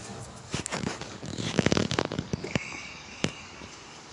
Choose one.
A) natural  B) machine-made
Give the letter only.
B